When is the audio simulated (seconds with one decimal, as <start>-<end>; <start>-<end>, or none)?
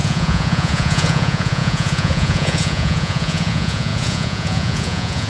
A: 0.0-5.3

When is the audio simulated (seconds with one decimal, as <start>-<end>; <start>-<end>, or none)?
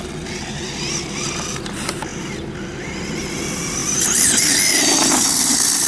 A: none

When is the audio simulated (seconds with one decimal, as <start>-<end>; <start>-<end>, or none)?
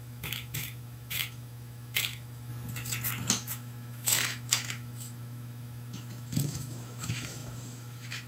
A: 0.0-2.5; 3.3-8.3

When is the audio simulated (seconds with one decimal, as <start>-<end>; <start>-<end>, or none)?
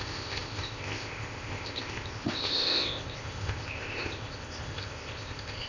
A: 0.0-5.7